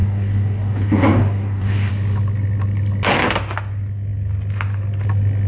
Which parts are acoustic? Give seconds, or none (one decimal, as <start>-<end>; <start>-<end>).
1.9-5.5